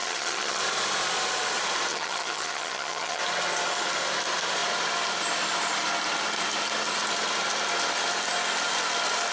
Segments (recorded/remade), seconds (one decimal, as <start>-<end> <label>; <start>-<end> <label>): 0.0-0.6 remade; 0.6-1.9 recorded; 1.9-3.2 remade; 3.2-9.3 recorded